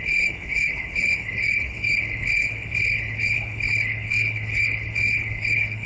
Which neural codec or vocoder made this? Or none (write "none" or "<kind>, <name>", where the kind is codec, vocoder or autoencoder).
codec, HILCodec